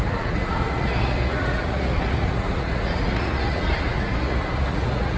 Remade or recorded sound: remade